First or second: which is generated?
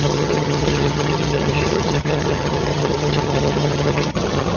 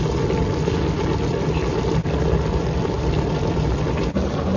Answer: first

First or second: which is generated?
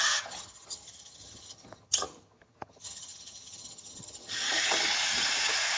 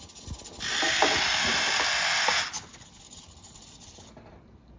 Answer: first